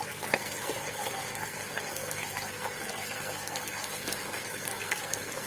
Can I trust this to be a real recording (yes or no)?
no